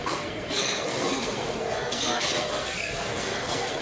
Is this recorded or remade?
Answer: remade